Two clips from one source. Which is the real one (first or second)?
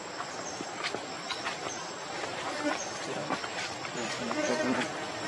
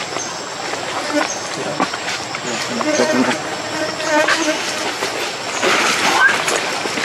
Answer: second